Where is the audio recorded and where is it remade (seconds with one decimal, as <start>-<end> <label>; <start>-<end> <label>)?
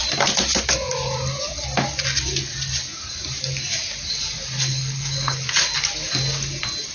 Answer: 0.0-4.7 recorded; 4.7-5.4 remade; 5.4-6.9 recorded